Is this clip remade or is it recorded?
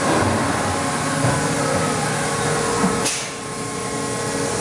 recorded